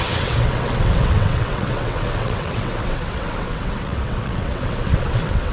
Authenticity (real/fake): fake